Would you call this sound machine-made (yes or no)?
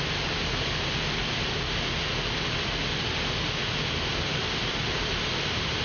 no